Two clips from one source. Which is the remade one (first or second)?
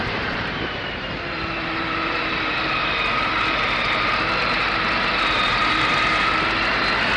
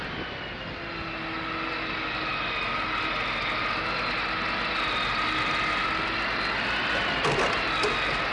first